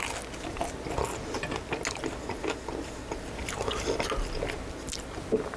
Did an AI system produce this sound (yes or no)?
no